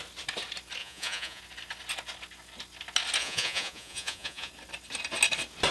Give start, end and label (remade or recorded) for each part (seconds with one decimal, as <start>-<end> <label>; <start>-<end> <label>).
0.0-0.8 recorded; 0.8-1.4 remade; 1.4-3.2 recorded; 3.2-4.5 remade; 4.5-5.7 recorded